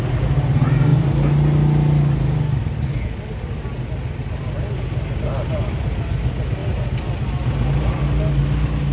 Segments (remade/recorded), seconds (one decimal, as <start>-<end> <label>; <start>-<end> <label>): 0.0-8.9 recorded